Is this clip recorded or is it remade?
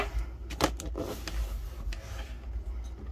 recorded